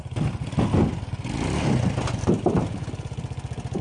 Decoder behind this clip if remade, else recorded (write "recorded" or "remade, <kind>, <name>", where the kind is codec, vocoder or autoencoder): recorded